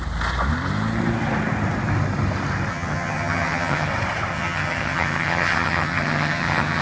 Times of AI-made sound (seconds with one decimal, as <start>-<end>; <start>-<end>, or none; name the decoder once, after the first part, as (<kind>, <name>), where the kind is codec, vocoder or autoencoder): 2.7-3.9 (vocoder, HiFi-GAN); 4.3-6.8